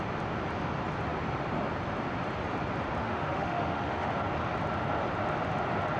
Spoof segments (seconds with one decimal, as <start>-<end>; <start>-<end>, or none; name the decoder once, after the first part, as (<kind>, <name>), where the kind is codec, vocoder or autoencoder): 3.0-4.1 (autoencoder, DAC-VAE)